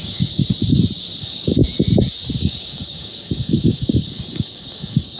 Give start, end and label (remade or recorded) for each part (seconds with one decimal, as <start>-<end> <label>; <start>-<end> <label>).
0.0-0.4 remade; 0.4-1.2 recorded; 1.2-1.6 remade; 1.6-2.3 recorded; 2.3-5.2 remade